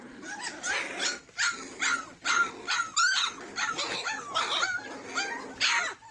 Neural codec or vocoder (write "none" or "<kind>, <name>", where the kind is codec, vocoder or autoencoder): none